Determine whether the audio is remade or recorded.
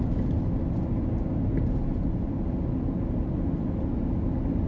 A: recorded